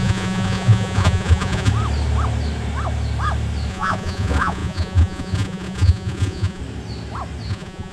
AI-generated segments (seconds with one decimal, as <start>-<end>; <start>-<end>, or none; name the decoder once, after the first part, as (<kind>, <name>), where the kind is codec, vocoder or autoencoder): 0.0-1.7 (vocoder, Vocos); 3.7-6.6; 7.5-7.9